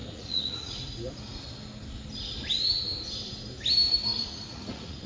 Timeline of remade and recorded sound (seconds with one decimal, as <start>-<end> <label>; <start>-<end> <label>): 0.0-0.8 remade; 0.8-4.1 recorded; 4.1-5.1 remade